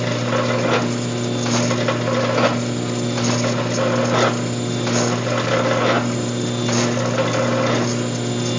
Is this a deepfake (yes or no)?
no